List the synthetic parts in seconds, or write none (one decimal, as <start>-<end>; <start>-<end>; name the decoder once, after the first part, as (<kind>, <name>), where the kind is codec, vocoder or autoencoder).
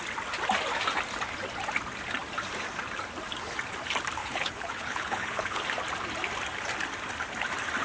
4.2-5.6 (codec, HILCodec)